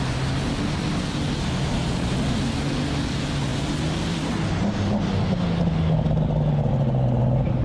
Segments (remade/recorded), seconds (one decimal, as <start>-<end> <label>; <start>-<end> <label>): 0.0-7.6 recorded

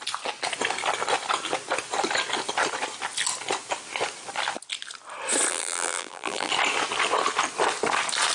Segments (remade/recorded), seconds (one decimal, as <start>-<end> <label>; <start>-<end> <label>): 0.0-5.5 recorded; 5.5-6.5 remade; 6.5-8.3 recorded

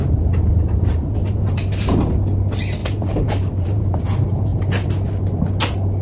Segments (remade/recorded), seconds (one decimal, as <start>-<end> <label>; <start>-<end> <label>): 0.0-2.0 remade; 2.0-2.8 recorded; 2.8-4.0 remade; 4.0-6.0 recorded

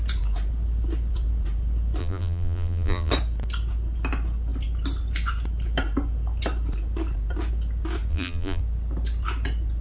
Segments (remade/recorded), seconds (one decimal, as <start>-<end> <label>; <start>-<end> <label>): 0.0-2.0 recorded; 2.0-3.1 remade; 3.1-8.1 recorded; 8.1-8.6 remade; 8.6-9.8 recorded

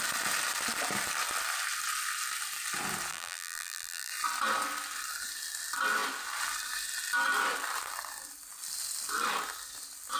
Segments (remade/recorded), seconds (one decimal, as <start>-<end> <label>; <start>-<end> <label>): 0.0-3.1 recorded; 3.1-4.1 remade; 4.1-10.2 recorded